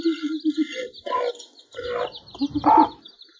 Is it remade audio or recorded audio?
recorded